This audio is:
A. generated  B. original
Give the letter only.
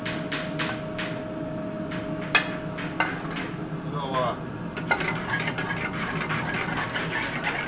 B